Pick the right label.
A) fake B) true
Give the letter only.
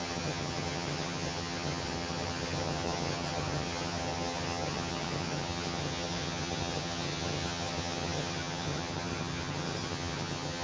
A